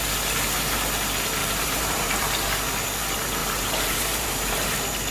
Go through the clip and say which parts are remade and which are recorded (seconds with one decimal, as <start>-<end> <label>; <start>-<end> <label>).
0.0-1.4 recorded; 1.4-2.3 remade; 2.3-3.4 recorded; 3.4-5.1 remade